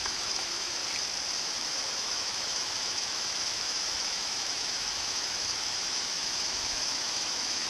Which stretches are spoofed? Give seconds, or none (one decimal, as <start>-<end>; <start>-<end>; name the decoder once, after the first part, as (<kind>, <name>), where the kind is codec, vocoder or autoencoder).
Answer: 0.0-0.8 (autoencoder, DAC-VAE); 1.4-7.7